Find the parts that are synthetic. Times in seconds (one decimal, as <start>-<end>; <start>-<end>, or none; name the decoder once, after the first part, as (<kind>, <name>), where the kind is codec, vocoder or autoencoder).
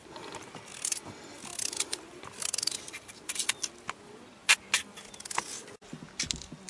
none